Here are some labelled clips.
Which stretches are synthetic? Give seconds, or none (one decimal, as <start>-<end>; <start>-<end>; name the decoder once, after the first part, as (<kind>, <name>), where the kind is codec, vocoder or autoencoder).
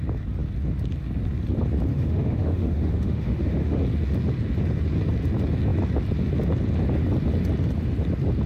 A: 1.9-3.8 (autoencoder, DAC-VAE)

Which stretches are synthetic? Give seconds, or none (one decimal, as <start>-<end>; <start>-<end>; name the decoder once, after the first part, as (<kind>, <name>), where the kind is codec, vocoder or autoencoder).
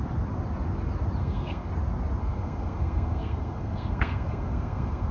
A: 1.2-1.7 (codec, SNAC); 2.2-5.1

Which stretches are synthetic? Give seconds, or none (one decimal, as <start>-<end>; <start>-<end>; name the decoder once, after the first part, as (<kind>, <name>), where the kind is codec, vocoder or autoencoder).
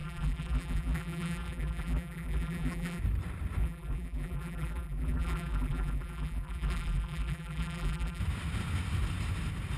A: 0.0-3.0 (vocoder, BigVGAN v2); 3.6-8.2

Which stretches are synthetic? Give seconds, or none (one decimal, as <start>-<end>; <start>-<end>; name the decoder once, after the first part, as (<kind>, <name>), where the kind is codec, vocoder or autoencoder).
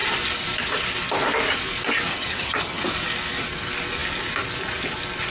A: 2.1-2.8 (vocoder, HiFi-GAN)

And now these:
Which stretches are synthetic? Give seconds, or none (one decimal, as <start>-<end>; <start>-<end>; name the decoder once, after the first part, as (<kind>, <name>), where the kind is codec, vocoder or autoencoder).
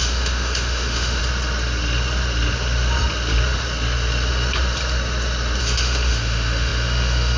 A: 0.0-1.2 (autoencoder, DAC-VAE); 5.6-7.4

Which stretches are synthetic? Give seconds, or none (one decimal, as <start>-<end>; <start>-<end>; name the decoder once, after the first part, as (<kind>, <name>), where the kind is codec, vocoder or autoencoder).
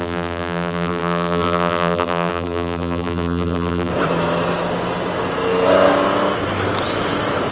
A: 0.0-3.9 (vocoder, BigVGAN v2)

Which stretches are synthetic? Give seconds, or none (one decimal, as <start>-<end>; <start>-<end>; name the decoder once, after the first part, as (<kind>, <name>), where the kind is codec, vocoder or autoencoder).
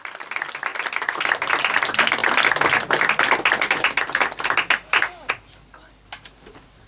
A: none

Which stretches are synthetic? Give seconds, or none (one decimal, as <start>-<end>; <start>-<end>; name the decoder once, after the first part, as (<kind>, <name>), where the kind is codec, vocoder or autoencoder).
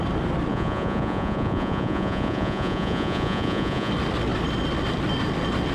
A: 0.5-3.9 (vocoder, Vocos)